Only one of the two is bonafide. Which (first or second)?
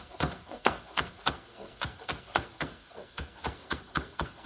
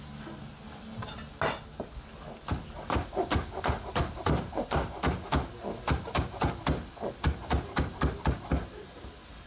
second